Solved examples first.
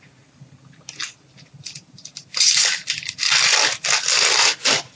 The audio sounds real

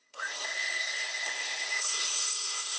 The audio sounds fake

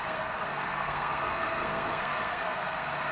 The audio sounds fake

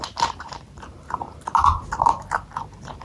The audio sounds fake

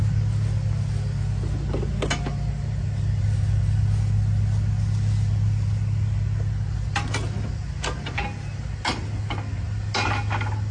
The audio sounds real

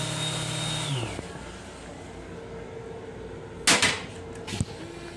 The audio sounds real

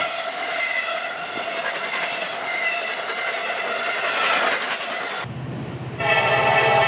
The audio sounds real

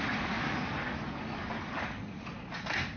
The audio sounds real